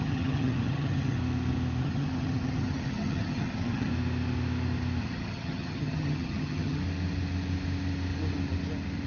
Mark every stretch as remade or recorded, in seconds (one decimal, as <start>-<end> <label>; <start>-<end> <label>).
0.0-1.2 remade; 1.2-1.8 recorded; 1.8-3.9 remade; 3.9-5.0 recorded; 5.0-6.8 remade; 6.8-9.1 recorded